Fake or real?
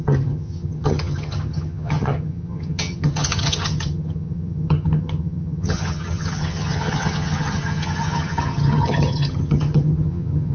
fake